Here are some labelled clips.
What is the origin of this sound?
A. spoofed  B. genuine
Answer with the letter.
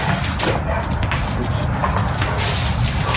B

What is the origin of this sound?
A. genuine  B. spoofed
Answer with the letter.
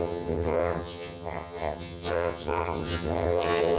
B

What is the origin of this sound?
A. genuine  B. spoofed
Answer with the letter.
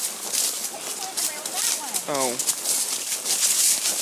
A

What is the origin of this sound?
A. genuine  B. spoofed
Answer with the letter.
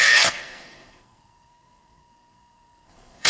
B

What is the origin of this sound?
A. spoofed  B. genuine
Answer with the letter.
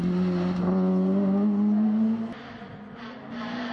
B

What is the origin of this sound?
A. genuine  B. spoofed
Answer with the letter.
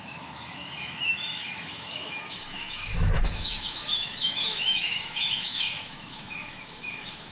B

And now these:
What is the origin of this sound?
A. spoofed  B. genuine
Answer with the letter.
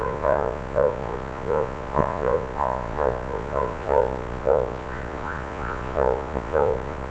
A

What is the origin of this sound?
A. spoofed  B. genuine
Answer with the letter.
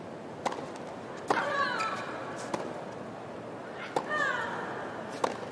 B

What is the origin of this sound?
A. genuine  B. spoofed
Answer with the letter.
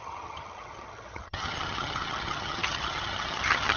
B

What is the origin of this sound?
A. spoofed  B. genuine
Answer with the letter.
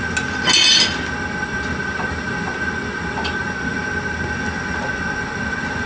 B